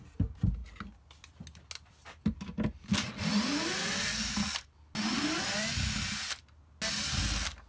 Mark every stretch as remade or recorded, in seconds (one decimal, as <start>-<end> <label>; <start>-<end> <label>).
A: 0.0-7.7 recorded